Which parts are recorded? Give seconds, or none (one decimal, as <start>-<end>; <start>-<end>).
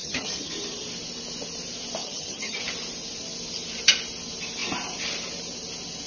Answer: 0.5-2.0; 2.6-6.1